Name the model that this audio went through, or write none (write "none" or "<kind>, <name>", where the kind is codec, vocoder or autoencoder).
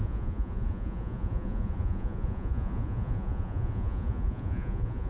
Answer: vocoder, Vocos